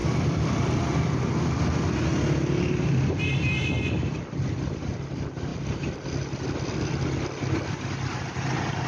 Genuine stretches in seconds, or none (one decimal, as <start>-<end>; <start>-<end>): 0.8-2.4; 4.9-8.9